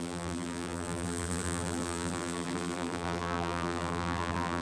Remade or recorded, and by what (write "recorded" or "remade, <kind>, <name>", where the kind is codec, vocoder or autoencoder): remade, vocoder, BigVGAN v2